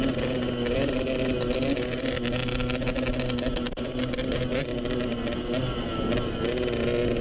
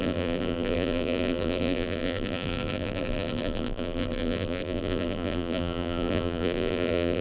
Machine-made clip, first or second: second